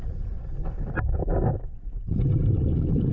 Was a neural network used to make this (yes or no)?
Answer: no